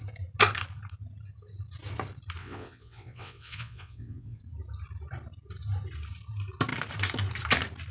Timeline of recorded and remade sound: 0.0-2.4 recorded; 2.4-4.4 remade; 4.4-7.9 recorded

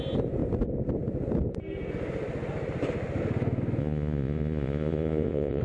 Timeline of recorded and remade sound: 0.0-3.8 recorded; 3.8-5.6 remade

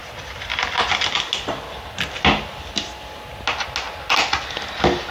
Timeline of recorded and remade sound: 0.0-5.1 recorded

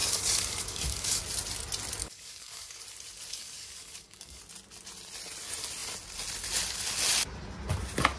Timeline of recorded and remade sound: 0.0-1.2 remade; 1.2-2.0 recorded; 2.0-2.8 remade; 2.8-3.3 recorded; 3.3-4.4 remade; 4.4-8.2 recorded

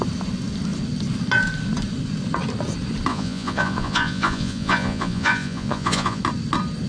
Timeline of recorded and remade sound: 0.0-3.1 recorded; 3.1-6.2 remade; 6.2-6.9 recorded

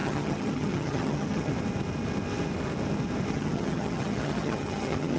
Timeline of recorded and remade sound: 0.0-1.5 remade; 1.5-3.3 recorded; 3.3-5.2 remade

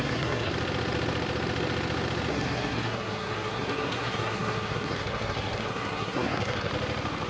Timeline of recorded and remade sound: 0.0-0.5 remade; 0.5-2.3 recorded; 2.3-6.7 remade; 6.7-7.3 recorded

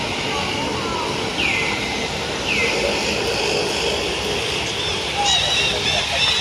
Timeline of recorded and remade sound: 0.0-6.4 recorded